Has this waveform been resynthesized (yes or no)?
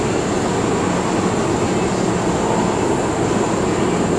no